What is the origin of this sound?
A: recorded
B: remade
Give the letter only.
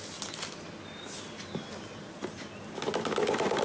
A